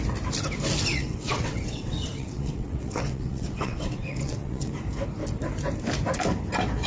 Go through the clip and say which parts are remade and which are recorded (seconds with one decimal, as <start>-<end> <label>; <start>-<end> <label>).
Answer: 0.0-0.9 recorded; 0.9-4.7 remade; 4.7-6.9 recorded